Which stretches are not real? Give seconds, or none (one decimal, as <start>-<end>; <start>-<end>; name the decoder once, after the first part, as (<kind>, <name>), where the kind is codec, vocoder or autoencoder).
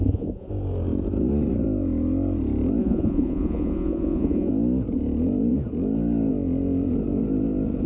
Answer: 0.0-0.5 (vocoder, Vocos); 2.8-4.5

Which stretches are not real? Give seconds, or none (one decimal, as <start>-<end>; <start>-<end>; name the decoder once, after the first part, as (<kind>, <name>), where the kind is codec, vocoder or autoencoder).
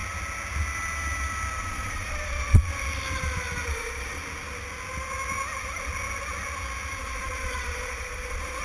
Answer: 1.6-2.7 (vocoder, Vocos); 3.7-4.2; 7.0-8.6